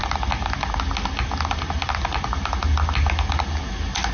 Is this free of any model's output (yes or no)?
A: yes